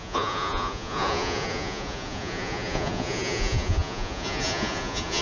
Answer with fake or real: fake